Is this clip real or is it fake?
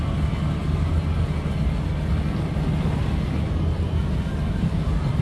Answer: real